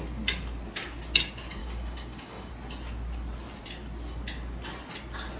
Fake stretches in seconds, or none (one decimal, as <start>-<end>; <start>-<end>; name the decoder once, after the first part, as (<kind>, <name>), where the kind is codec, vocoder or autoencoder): 1.6-2.5 (codec, DAC)